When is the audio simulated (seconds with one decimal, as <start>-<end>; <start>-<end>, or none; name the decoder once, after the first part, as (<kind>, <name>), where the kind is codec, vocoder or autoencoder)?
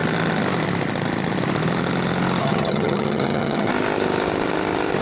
2.4-3.7 (vocoder, HiFi-GAN)